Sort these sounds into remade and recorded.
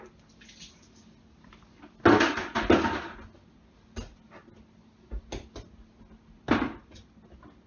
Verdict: recorded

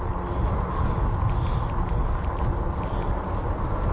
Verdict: recorded